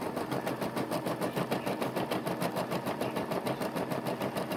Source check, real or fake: real